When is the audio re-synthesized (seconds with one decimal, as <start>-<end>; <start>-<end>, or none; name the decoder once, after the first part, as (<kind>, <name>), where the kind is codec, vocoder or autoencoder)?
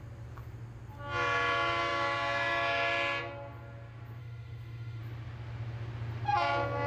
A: 4.2-5.0 (autoencoder, DAC-VAE)